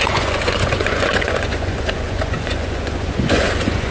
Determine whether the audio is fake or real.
fake